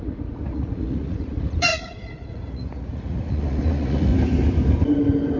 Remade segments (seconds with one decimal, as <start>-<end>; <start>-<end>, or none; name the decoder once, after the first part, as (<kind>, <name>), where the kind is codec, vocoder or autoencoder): 0.0-4.1 (vocoder, Vocos)